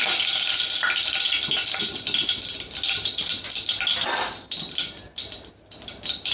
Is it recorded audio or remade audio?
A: recorded